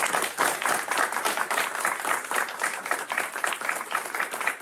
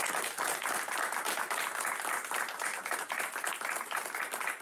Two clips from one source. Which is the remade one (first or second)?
first